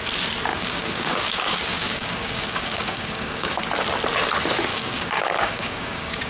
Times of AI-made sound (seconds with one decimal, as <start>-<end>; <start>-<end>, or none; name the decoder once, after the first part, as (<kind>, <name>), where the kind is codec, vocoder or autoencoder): 0.5-3.6 (codec, DAC); 4.7-6.3